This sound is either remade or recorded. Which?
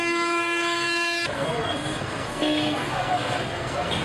remade